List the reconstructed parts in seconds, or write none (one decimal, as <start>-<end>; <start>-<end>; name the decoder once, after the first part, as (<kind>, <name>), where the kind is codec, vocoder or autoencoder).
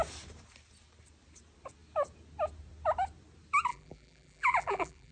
3.7-5.1 (vocoder, BigVGAN v2)